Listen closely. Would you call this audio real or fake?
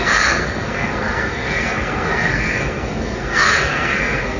fake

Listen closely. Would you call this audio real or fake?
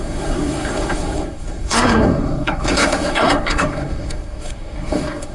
fake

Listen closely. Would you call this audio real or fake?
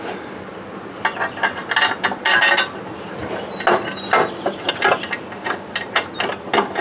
real